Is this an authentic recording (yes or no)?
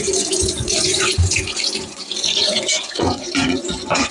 no